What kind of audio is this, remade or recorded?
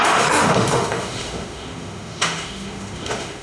remade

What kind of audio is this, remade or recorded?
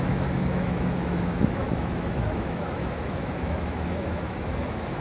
remade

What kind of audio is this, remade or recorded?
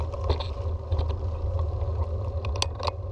recorded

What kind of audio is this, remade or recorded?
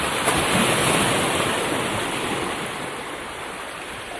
recorded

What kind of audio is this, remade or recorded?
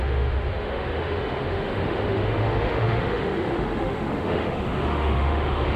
remade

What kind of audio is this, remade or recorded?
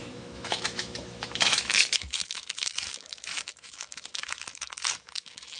remade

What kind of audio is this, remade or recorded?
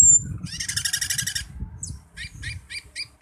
recorded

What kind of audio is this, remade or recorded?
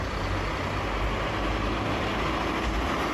recorded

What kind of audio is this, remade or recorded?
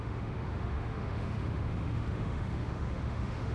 remade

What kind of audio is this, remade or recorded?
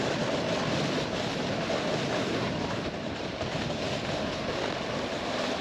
recorded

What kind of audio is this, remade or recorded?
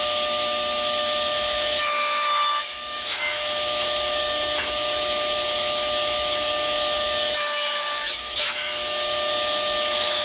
remade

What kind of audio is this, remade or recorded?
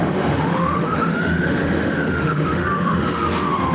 remade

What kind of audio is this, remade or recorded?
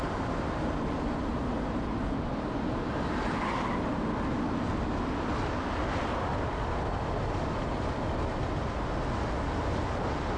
recorded